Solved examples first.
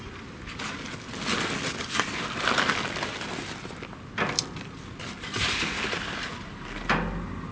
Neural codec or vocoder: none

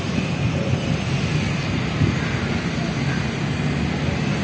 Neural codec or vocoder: none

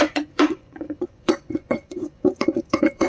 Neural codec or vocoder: vocoder, Vocos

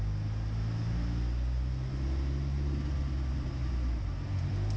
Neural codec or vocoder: none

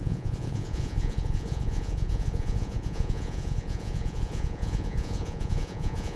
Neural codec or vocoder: vocoder, Vocos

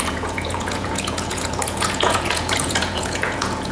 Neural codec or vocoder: vocoder, Vocos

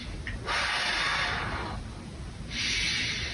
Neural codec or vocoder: none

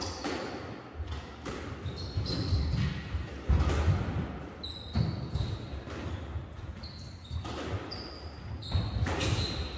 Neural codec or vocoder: none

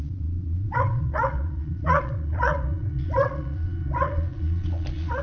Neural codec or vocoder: vocoder, Vocos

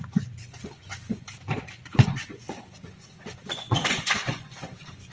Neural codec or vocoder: vocoder, Vocos